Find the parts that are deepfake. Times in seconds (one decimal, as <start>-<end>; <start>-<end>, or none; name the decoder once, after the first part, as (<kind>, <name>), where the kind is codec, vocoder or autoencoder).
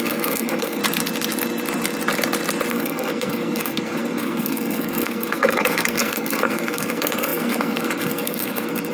0.0-0.8 (codec, SNAC); 2.7-8.9